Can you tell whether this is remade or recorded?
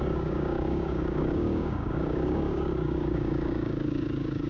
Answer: remade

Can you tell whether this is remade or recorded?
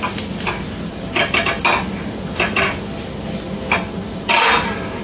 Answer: recorded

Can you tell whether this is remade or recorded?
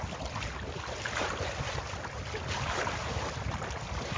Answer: recorded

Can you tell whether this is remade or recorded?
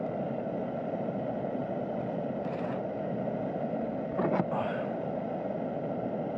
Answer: recorded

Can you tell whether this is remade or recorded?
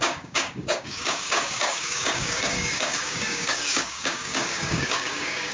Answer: remade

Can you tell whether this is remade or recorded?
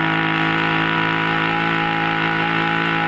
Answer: recorded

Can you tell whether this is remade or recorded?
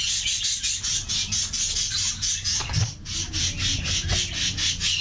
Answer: recorded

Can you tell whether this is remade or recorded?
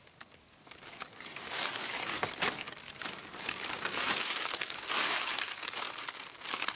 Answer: remade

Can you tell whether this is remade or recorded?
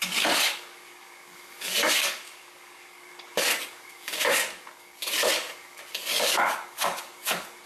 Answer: remade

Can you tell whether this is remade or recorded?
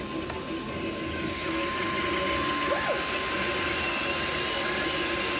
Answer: recorded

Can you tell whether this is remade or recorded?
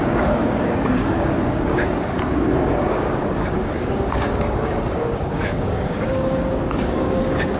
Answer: remade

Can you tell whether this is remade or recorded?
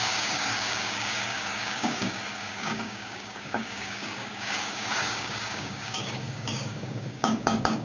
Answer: remade